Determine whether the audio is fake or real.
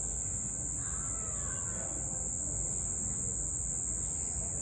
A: real